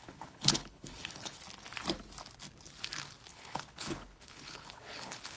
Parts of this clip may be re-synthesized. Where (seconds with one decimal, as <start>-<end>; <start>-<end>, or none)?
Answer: 0.0-1.4; 3.3-5.4